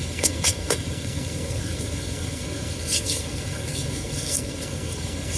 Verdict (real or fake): fake